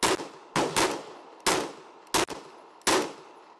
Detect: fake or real real